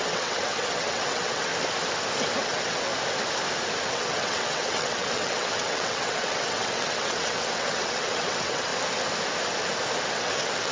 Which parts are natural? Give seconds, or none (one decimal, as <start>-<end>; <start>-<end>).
1.5-2.4; 2.9-3.9; 8.7-10.1